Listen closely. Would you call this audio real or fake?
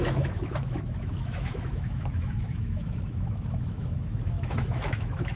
fake